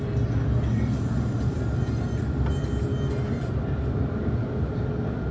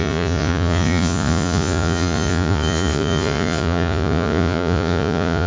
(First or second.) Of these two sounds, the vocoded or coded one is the second